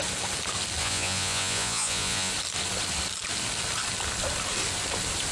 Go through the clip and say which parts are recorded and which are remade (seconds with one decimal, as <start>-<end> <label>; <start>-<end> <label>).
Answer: 0.0-0.8 recorded; 0.8-2.3 remade; 2.3-5.3 recorded